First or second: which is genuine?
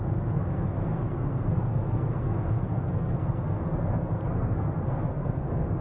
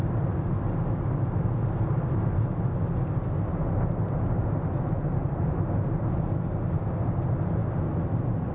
second